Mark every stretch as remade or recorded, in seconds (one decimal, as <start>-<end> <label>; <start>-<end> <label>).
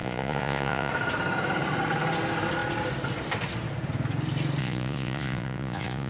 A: 0.0-0.9 remade; 0.9-4.6 recorded; 4.6-6.1 remade